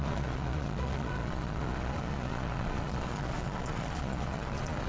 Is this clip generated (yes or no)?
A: yes